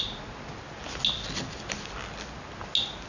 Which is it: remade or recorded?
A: recorded